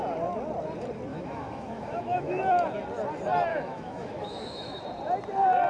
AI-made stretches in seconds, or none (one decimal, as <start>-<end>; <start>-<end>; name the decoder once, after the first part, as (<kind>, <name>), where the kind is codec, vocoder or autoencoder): 1.1-2.4 (autoencoder, DAC-VAE); 3.5-4.8